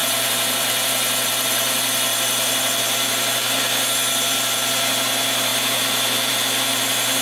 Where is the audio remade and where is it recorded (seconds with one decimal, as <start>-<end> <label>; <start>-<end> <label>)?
0.0-2.8 remade; 2.8-7.2 recorded